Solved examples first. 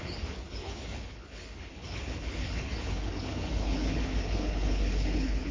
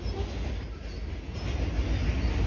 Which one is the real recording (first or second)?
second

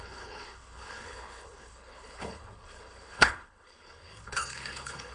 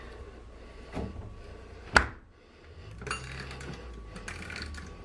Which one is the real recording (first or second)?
second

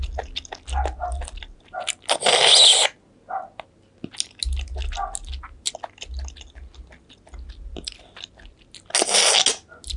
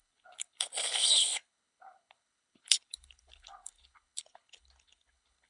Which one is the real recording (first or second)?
first